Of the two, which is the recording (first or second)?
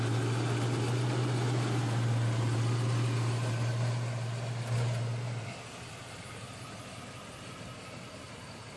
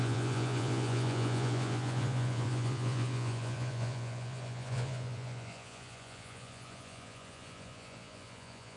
first